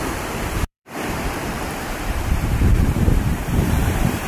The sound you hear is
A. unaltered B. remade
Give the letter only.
B